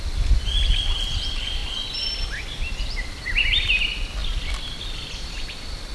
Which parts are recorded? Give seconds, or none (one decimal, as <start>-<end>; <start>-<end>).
1.6-2.3